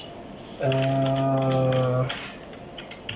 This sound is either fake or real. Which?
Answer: real